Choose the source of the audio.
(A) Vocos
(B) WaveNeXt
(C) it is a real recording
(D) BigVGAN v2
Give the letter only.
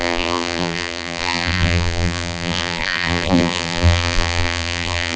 D